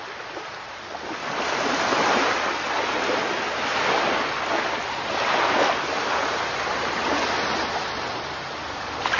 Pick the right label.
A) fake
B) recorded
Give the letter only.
B